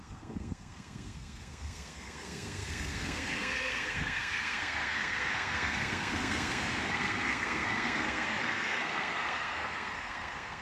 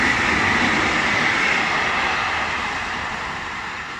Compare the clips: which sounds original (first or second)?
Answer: second